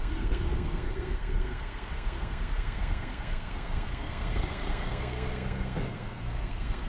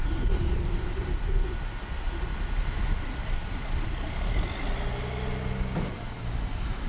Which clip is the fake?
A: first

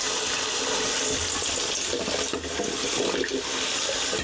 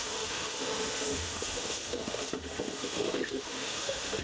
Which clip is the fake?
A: second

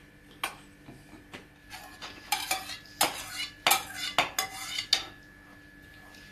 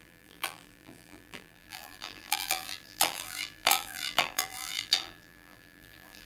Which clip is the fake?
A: second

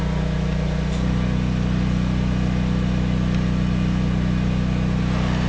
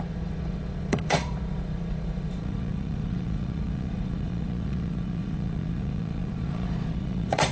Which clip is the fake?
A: second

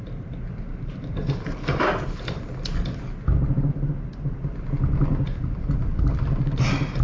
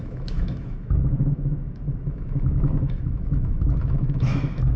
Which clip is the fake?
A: second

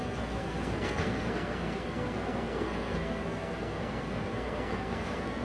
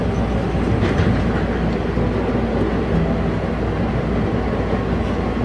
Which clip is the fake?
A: first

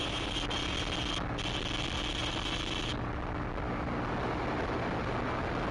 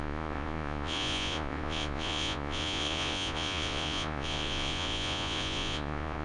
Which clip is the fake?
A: second